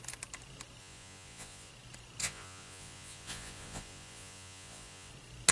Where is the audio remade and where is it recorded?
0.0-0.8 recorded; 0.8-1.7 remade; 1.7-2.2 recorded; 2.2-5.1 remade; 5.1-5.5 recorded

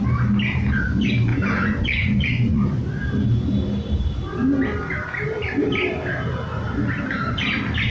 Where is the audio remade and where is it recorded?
0.0-1.3 recorded; 1.3-3.0 remade; 3.0-7.9 recorded

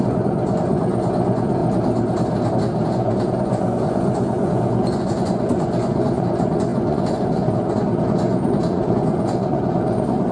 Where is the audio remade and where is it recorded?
0.0-1.6 remade; 1.6-2.9 recorded; 2.9-10.3 remade

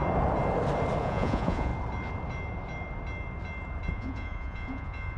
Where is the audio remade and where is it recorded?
0.0-1.0 recorded; 1.0-1.7 remade; 1.7-3.9 recorded; 3.9-5.2 remade

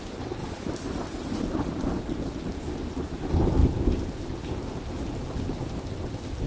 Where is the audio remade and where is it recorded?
0.0-6.5 recorded

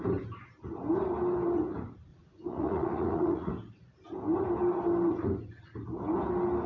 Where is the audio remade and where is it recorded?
0.0-2.1 recorded; 2.1-3.5 remade; 3.5-6.7 recorded

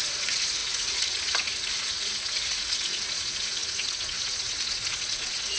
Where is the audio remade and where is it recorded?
0.0-5.6 remade